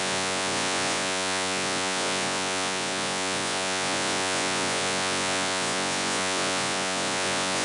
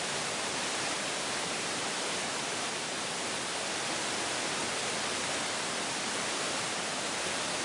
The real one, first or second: second